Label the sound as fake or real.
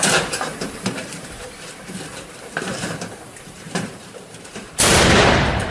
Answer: fake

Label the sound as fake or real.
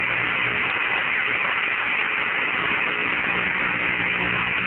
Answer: real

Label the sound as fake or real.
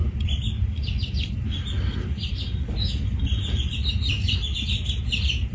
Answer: real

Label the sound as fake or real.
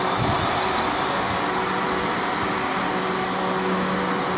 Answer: real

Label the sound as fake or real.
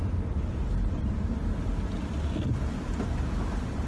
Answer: real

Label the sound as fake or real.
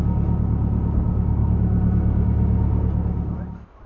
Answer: real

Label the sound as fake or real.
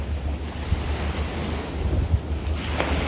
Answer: real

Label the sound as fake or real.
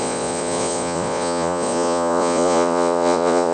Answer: fake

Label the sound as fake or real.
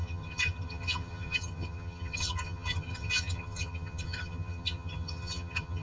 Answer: fake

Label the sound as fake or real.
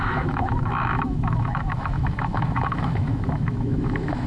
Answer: fake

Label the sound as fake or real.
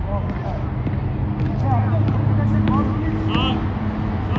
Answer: real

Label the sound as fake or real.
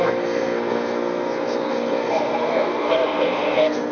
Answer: fake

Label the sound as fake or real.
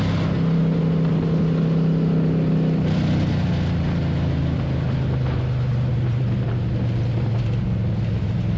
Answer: real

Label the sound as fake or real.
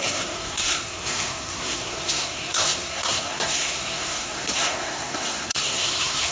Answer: fake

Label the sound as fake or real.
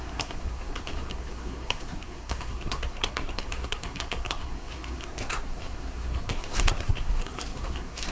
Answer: fake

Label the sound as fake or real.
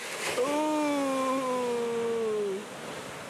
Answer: real